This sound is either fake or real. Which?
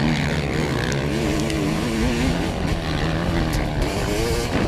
real